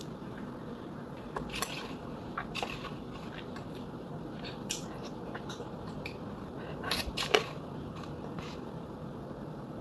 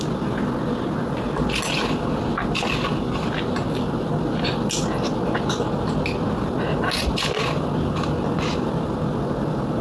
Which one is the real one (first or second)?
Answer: second